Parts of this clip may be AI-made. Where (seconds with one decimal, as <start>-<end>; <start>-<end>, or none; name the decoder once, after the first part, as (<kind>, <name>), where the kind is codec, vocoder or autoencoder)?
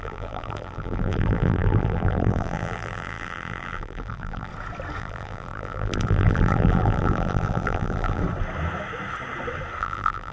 0.0-4.5 (vocoder, BigVGAN v2); 5.0-8.2; 9.8-10.3